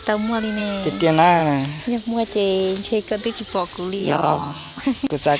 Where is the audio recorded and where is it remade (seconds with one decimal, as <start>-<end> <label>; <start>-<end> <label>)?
0.0-4.0 recorded; 4.0-4.8 remade; 4.8-5.4 recorded